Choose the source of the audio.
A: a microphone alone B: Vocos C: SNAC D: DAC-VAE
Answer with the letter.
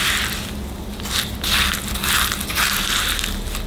A